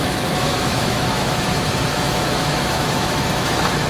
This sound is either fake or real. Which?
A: fake